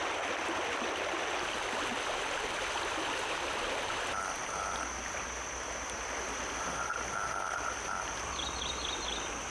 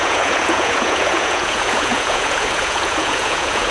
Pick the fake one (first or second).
second